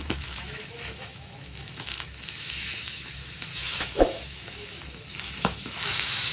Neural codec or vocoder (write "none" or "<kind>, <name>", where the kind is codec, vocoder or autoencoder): autoencoder, DAC-VAE